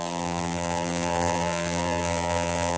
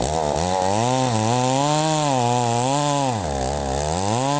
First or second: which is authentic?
second